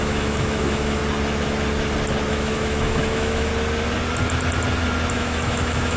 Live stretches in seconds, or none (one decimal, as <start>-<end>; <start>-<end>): 1.0-2.3; 3.5-5.1

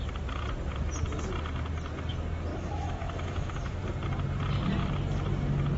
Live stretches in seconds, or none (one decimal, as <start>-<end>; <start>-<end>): 0.0-2.5; 3.8-5.8

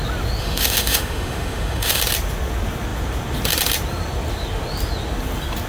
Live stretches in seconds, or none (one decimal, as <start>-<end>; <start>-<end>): 0.0-0.4; 2.0-5.7

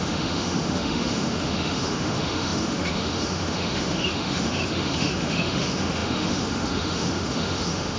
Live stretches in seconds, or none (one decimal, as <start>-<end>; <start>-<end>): none

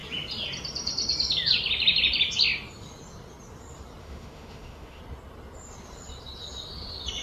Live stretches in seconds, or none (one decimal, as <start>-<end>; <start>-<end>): 0.0-4.0; 5.0-7.2